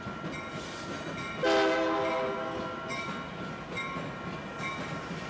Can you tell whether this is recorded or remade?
recorded